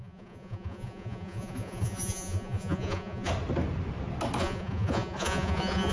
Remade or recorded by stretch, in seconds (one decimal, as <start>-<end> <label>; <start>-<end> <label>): 0.0-3.3 remade; 3.3-4.4 recorded; 4.4-5.9 remade